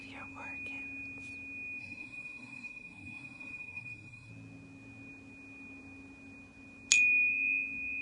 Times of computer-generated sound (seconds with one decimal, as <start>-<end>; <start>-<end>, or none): 1.8-4.3